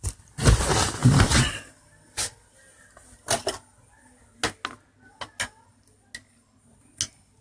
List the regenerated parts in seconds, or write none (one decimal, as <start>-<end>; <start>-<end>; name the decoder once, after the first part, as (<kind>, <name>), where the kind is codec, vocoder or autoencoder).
none